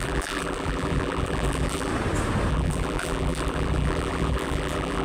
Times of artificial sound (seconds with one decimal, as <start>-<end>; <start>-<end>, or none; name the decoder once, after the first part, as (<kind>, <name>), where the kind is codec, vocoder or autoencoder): 0.0-1.9 (vocoder, BigVGAN v2); 2.5-5.0